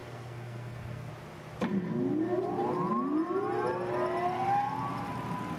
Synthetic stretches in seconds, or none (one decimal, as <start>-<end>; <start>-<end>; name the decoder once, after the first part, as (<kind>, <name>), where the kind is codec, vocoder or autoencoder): 0.0-1.1 (codec, SNAC)